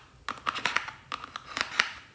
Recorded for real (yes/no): yes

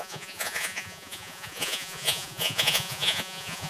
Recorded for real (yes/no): no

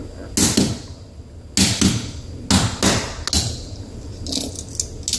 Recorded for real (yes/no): yes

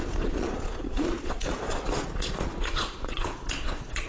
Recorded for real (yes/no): no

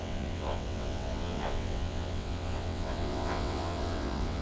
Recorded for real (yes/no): no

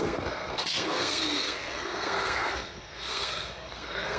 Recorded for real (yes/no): no